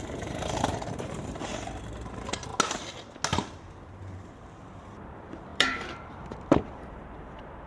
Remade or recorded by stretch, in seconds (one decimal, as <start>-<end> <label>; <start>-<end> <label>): 0.0-1.5 remade; 1.5-2.1 recorded; 2.1-2.5 remade; 2.5-4.0 recorded; 4.0-7.7 remade

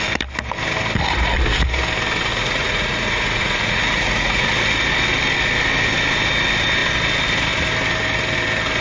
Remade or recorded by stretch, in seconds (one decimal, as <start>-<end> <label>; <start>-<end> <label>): 0.0-2.3 recorded; 2.3-4.5 remade; 4.5-8.8 recorded

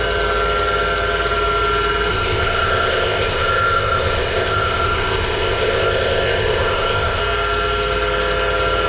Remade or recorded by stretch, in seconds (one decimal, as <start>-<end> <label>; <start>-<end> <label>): 0.0-2.1 recorded; 2.1-7.2 remade; 7.2-8.9 recorded

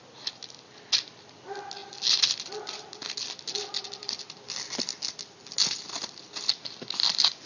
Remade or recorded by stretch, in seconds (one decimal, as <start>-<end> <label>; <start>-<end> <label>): 0.0-7.5 recorded